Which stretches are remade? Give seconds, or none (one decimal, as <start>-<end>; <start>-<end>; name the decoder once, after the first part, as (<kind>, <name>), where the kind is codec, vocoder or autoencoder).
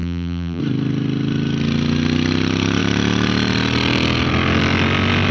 0.0-0.6 (vocoder, BigVGAN v2)